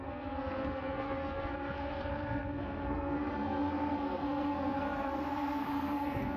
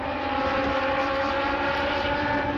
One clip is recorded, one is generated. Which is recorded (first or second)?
second